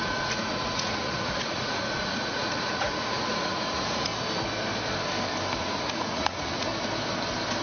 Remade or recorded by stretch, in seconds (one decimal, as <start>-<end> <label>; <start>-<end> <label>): 0.0-4.1 remade; 4.1-5.6 recorded; 5.6-6.7 remade; 6.7-7.6 recorded